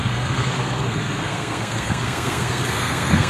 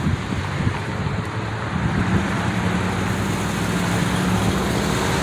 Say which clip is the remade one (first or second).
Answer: first